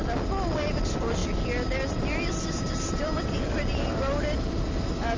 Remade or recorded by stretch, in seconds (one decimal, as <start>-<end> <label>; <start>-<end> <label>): 0.0-5.2 recorded